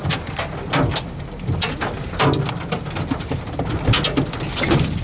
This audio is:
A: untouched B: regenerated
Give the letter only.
A